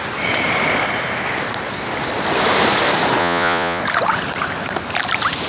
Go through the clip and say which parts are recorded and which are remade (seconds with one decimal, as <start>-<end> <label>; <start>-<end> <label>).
0.0-3.2 recorded; 3.2-3.8 remade; 3.8-5.5 recorded